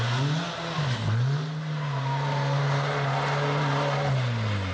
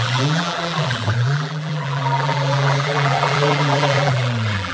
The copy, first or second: second